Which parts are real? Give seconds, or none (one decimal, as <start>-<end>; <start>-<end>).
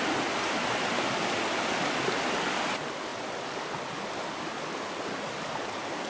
0.0-6.1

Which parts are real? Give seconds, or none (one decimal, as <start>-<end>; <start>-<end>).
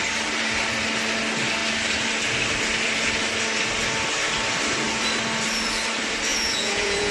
0.0-6.3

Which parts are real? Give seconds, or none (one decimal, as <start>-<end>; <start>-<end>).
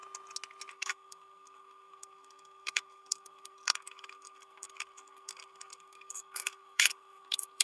0.0-0.7